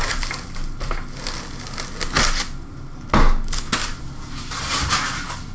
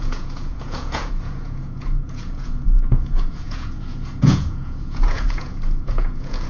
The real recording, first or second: first